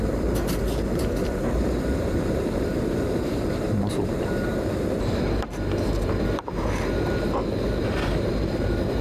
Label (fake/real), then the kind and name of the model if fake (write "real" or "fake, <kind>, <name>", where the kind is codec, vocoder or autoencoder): fake, vocoder, BigVGAN v2